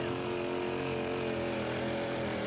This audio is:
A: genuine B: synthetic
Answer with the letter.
A